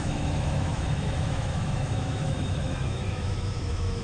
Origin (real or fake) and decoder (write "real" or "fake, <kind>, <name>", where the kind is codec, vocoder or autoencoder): fake, autoencoder, DAC-VAE